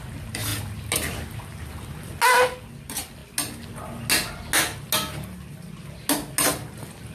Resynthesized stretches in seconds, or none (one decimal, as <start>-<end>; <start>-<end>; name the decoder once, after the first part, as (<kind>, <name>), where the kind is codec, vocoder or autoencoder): none